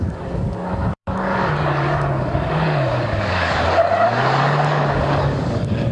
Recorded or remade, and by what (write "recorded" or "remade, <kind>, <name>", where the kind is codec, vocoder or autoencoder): remade, codec, DAC